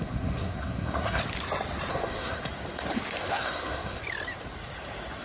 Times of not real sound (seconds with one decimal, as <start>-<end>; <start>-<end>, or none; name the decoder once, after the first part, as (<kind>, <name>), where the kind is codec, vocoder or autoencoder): 0.0-1.2 (codec, SNAC); 1.9-2.4; 3.3-4.0